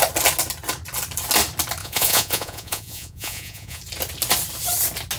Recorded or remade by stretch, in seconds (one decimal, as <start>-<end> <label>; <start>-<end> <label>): 0.0-1.8 recorded; 1.8-3.8 remade; 3.8-5.2 recorded